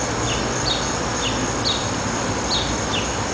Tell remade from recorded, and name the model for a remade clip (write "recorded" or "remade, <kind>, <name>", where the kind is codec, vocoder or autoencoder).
recorded